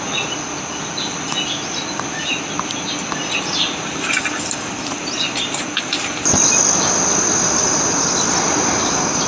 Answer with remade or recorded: recorded